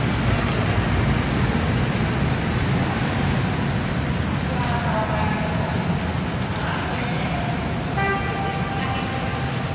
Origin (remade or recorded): recorded